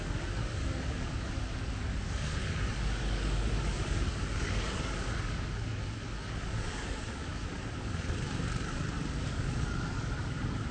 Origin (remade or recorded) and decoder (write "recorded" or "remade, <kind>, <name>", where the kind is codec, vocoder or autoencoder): remade, codec, DAC